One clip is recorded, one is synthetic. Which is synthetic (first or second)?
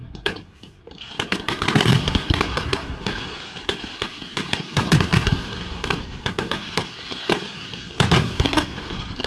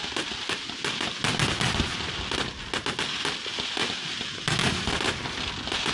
first